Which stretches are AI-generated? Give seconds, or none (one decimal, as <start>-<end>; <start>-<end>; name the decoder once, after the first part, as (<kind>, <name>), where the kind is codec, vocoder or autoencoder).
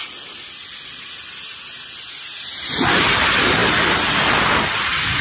none